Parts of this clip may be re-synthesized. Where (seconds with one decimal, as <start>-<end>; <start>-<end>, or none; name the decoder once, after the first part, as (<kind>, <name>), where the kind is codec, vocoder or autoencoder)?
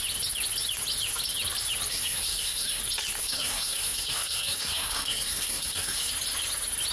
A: 1.9-2.8 (codec, SNAC); 3.2-6.1